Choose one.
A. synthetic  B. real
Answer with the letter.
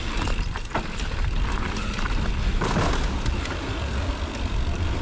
A